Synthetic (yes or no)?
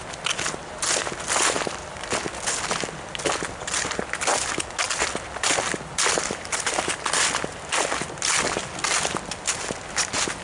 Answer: no